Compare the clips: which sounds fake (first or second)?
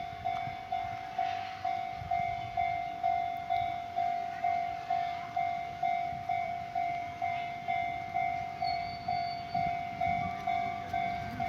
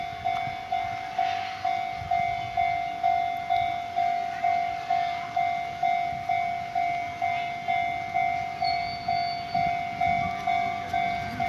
first